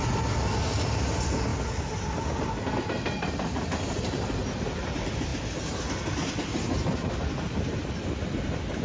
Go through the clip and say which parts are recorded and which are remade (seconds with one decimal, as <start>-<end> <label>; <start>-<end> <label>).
0.0-8.8 recorded